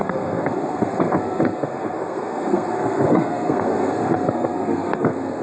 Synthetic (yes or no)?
yes